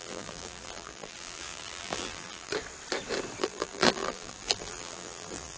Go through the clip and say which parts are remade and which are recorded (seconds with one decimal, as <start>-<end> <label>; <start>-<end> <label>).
0.0-2.5 remade; 2.5-3.4 recorded; 3.4-5.6 remade